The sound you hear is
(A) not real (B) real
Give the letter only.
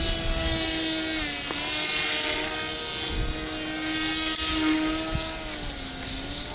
B